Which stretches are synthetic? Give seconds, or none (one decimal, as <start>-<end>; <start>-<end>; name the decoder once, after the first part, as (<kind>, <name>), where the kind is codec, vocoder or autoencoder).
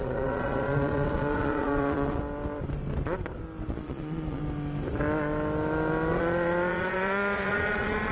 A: 0.0-2.2 (vocoder, Vocos); 3.7-4.4; 6.1-8.1